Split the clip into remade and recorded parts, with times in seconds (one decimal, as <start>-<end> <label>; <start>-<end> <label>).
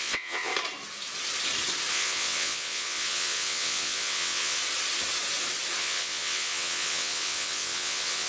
0.0-0.5 remade; 0.5-1.9 recorded; 1.9-4.6 remade; 4.6-5.8 recorded; 5.8-8.3 remade